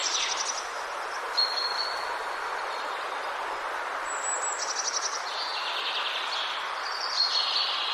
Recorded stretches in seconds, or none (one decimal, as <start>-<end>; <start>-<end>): 0.0-7.9